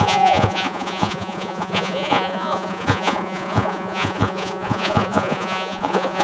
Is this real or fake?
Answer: fake